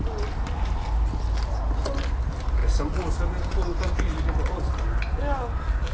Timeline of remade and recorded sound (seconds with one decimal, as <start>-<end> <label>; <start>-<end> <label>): 0.0-5.9 recorded